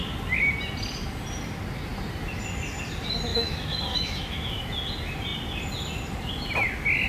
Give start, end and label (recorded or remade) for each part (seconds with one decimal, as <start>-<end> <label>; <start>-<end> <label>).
0.0-3.3 recorded; 3.3-4.6 remade; 4.6-7.1 recorded